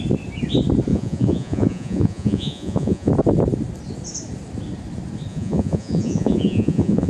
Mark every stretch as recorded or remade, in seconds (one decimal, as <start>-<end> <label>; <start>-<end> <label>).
0.0-0.9 recorded; 0.9-3.1 remade; 3.1-5.3 recorded; 5.3-7.1 remade